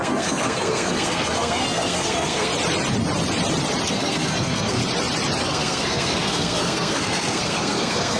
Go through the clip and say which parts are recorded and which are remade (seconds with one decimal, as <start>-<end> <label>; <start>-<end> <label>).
0.0-2.5 remade; 2.5-3.9 recorded; 3.9-4.8 remade; 4.8-5.4 recorded; 5.4-8.2 remade